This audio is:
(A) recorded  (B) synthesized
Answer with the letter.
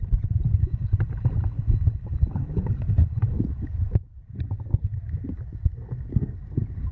A